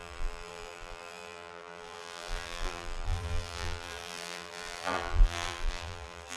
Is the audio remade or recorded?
remade